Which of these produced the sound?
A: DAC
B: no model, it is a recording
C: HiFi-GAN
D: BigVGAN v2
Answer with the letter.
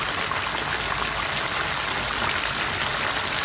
B